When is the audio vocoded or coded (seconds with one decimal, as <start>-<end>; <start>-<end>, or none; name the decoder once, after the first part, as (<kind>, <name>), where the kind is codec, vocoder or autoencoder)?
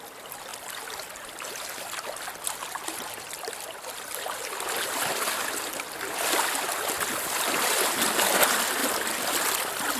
none